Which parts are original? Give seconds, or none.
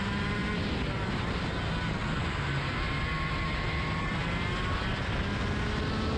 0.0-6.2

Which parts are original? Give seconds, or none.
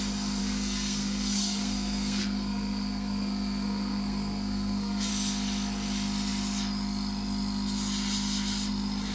0.0-0.4; 5.1-9.1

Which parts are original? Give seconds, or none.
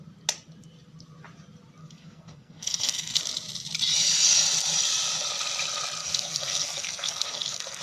0.0-1.8; 3.2-6.0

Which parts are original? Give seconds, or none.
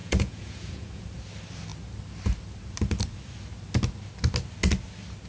1.0-5.3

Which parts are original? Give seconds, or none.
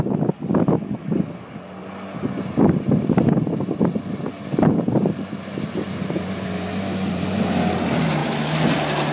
0.0-9.1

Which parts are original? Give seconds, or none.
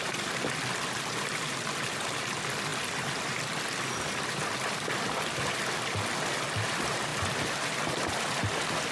0.0-8.9